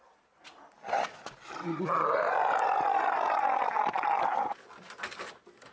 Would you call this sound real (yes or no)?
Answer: yes